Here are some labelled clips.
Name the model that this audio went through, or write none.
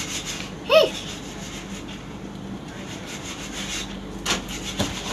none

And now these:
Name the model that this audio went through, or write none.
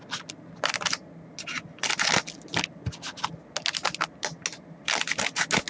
none